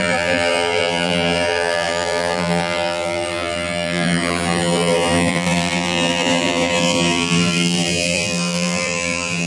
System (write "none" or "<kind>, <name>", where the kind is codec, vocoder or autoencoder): vocoder, BigVGAN v2